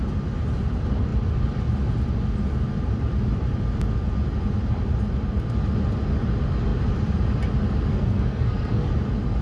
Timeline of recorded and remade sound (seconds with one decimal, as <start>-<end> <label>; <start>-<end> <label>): 0.0-7.9 recorded; 7.9-8.9 remade; 8.9-9.4 recorded